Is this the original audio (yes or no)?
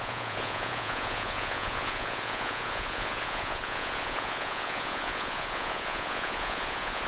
no